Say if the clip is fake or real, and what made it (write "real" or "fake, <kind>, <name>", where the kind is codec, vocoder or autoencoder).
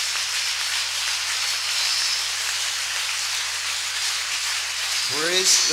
real